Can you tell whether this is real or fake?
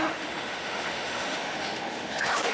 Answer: fake